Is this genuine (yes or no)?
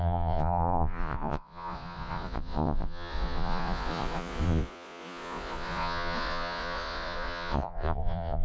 no